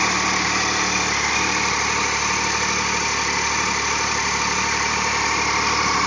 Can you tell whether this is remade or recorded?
recorded